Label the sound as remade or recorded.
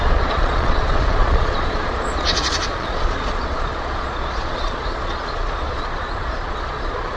remade